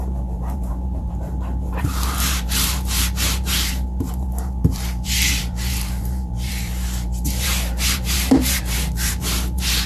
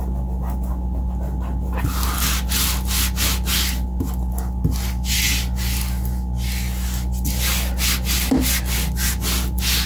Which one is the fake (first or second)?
first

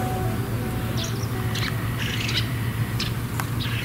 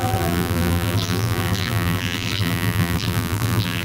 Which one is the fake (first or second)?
second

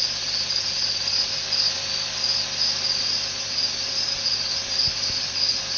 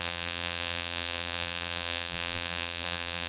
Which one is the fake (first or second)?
second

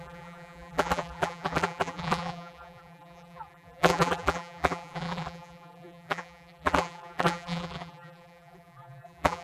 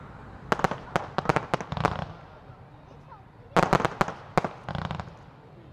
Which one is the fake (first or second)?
first